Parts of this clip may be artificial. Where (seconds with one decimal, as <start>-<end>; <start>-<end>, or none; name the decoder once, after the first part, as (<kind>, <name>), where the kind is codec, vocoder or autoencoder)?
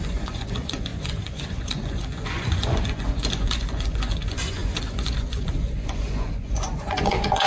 0.0-7.5 (vocoder, Vocos)